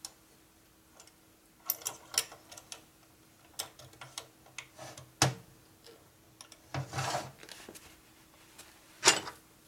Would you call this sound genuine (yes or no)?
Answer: yes